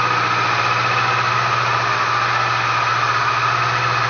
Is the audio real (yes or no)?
no